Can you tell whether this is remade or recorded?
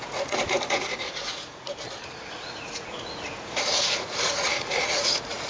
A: remade